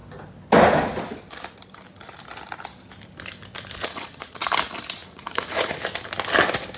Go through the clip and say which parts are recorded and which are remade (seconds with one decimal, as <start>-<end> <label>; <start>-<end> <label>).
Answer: 0.0-3.8 recorded; 3.8-4.4 remade; 4.4-5.0 recorded; 5.0-5.8 remade; 5.8-6.8 recorded